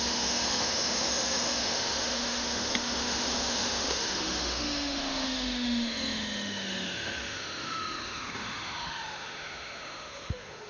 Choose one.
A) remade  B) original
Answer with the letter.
A